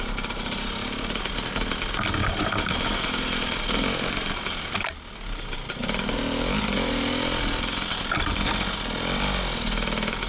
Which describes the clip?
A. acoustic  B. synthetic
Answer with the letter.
A